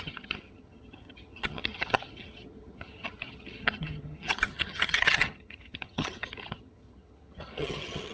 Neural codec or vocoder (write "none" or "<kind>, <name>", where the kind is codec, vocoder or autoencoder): vocoder, HiFi-GAN